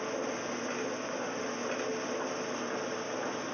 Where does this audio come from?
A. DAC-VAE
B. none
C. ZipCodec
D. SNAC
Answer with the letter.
B